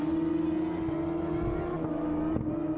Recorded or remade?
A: recorded